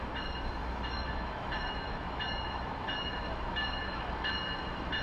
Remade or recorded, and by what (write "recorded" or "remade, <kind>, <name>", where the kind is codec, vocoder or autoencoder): remade, autoencoder, DAC-VAE